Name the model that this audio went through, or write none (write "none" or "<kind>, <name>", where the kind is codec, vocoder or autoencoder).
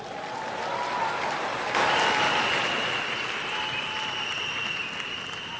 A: none